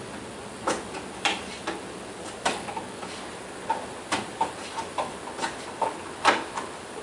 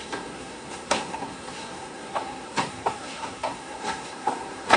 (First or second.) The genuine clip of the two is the first